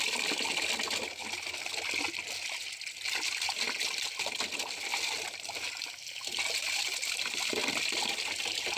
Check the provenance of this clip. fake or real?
real